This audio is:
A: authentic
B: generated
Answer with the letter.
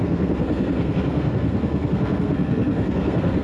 B